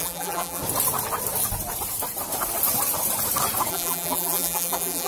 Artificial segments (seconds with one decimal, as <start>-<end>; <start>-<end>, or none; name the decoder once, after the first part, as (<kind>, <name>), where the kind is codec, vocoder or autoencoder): 0.0-0.6 (vocoder, BigVGAN v2); 3.7-5.1